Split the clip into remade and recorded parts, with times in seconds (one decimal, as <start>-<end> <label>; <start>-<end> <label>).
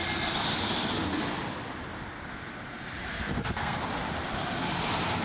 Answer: 0.0-3.1 recorded; 3.1-3.8 remade; 3.8-5.2 recorded